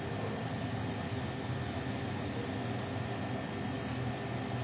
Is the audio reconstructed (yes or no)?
no